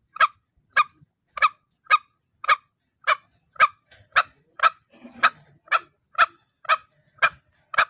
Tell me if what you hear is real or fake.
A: real